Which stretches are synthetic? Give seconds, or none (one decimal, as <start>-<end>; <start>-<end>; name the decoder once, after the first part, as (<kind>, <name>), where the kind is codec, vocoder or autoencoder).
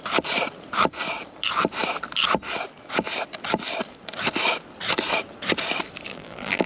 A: 6.1-6.7 (vocoder, BigVGAN v2)